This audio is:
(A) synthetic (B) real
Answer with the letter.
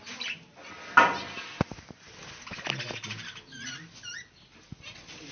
B